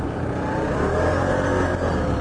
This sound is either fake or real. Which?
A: real